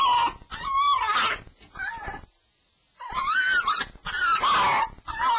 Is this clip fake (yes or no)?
no